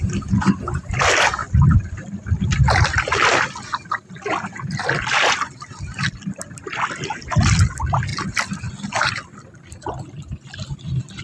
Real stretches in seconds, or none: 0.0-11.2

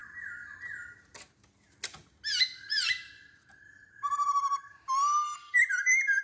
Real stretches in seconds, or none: 1.1-2.7

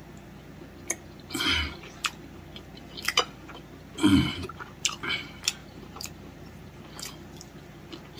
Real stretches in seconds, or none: 0.0-4.3; 5.0-5.6; 6.8-8.2

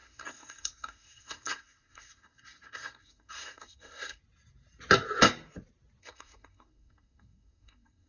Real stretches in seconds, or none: 4.2-6.0

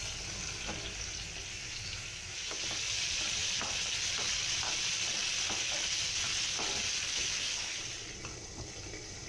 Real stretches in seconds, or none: 0.0-1.5; 2.6-7.1; 7.8-9.3